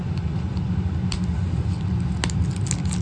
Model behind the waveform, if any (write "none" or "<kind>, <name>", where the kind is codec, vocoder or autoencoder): none